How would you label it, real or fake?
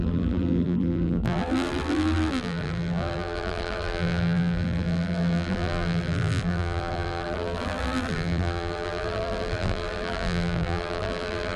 fake